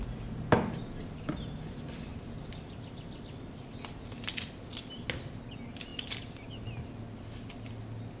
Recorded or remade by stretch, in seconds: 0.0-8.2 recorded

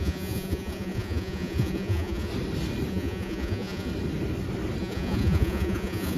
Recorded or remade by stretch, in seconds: 0.0-2.3 remade; 2.3-2.9 recorded; 2.9-3.9 remade; 3.9-4.8 recorded; 4.8-6.2 remade

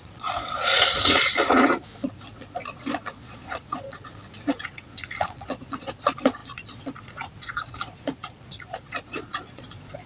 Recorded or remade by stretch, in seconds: 0.0-10.1 remade

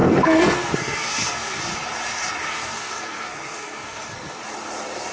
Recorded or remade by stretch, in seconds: 0.0-1.6 remade; 1.6-2.4 recorded; 2.4-4.4 remade; 4.4-5.1 recorded

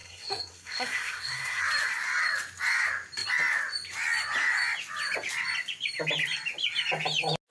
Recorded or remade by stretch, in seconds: 0.0-1.6 remade; 1.6-7.5 recorded

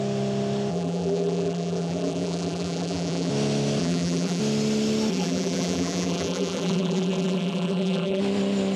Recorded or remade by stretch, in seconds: 0.0-0.7 recorded; 0.7-3.3 remade; 3.3-3.8 recorded; 3.8-4.4 remade; 4.4-5.1 recorded; 5.1-8.2 remade; 8.2-8.8 recorded